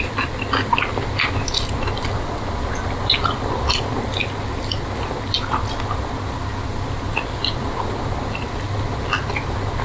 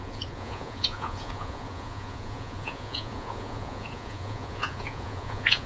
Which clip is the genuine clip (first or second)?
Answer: first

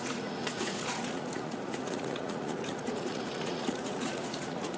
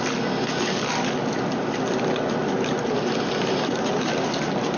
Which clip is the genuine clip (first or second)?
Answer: second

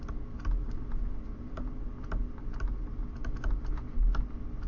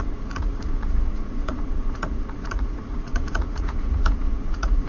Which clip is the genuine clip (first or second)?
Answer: first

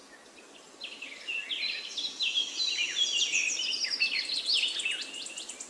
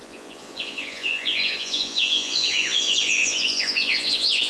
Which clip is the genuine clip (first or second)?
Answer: first